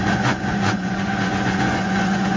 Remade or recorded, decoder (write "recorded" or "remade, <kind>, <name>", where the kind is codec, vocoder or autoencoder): remade, vocoder, Vocos